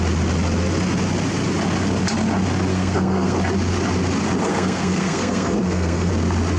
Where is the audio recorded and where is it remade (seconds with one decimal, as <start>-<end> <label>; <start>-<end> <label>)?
0.0-2.7 recorded; 2.7-3.4 remade; 3.4-4.5 recorded; 4.5-6.1 remade; 6.1-6.6 recorded